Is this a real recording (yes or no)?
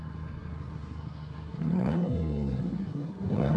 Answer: no